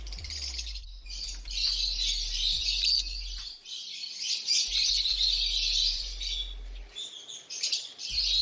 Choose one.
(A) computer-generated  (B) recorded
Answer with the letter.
B